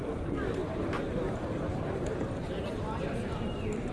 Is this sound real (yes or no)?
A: no